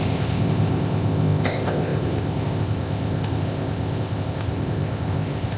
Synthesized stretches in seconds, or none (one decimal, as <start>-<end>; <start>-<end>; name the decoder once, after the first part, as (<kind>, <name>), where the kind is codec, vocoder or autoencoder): 0.0-5.6 (codec, ZipCodec)